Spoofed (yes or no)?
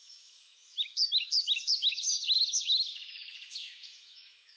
yes